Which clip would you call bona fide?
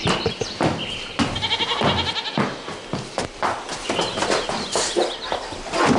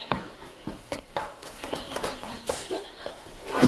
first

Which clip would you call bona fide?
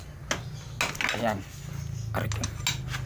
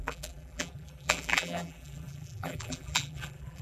first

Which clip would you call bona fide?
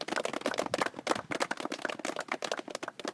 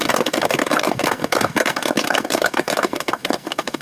first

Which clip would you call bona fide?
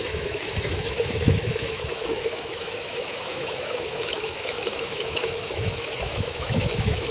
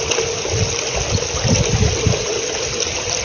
second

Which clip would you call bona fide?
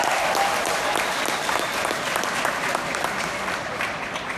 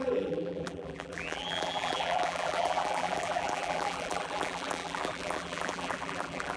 first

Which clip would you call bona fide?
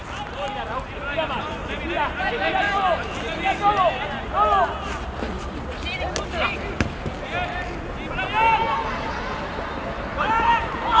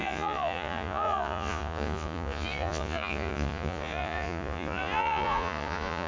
first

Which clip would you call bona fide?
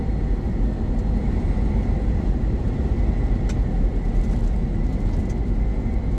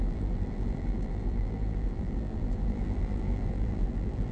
first